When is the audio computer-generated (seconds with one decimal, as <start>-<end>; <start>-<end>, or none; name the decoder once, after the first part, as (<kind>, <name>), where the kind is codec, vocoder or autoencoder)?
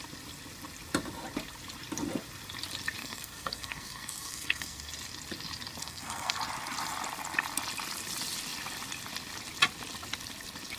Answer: 3.0-4.9 (codec, SNAC); 5.8-6.4